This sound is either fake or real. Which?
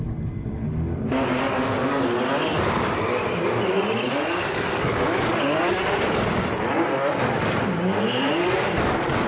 real